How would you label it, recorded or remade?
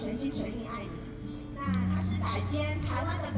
recorded